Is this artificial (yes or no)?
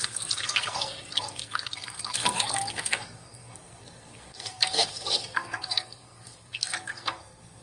yes